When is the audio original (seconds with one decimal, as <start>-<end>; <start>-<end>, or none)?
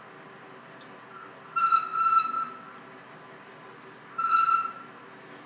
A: 0.0-5.5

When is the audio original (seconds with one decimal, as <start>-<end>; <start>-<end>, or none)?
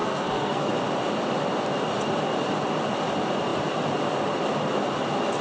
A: 0.7-5.4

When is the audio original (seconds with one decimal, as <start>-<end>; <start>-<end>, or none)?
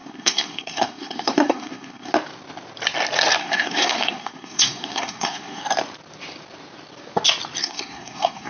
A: 2.1-3.4; 5.6-7.6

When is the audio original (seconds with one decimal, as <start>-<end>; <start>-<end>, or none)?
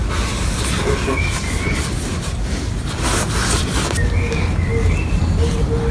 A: 0.0-5.9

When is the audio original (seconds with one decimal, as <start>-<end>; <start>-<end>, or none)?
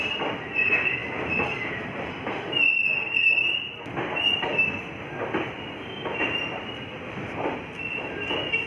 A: 0.0-8.7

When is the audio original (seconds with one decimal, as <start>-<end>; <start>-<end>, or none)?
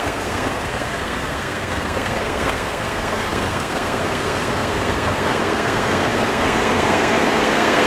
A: none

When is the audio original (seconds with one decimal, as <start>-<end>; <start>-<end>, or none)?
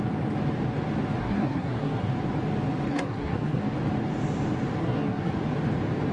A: 0.0-1.2; 2.1-2.9; 3.6-4.8; 5.3-6.1